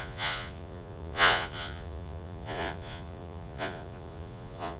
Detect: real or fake fake